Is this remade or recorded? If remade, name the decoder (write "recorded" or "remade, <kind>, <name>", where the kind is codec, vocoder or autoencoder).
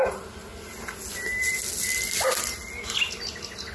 recorded